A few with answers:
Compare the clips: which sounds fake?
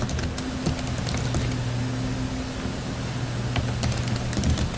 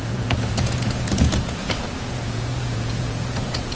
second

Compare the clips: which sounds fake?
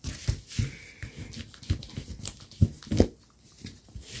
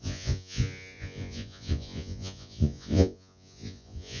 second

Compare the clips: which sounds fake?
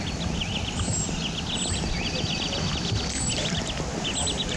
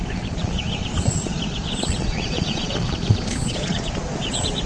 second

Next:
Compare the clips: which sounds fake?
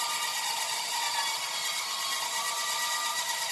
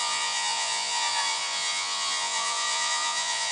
second